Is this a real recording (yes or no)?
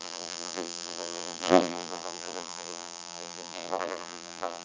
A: no